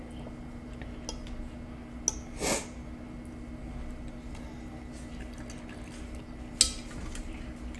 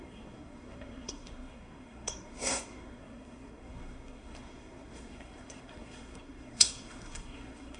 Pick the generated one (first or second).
second